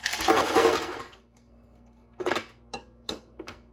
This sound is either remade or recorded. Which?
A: remade